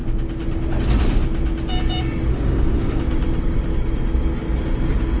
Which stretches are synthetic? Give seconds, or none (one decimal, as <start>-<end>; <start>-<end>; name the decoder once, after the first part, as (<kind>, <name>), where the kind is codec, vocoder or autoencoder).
2.3-3.0 (autoencoder, DAC-VAE)